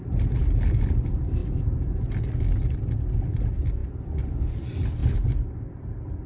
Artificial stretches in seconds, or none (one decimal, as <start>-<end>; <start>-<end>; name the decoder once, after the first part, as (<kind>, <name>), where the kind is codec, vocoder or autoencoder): none